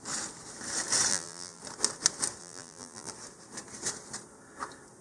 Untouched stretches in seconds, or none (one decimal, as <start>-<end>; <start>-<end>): 0.0-1.1; 1.6-2.4; 3.1-5.0